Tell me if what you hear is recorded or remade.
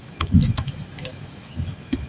remade